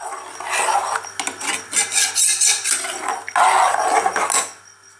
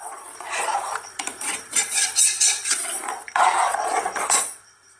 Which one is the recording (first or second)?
first